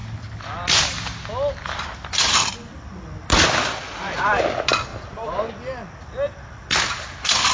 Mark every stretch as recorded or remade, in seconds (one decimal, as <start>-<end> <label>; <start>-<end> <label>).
0.0-7.5 recorded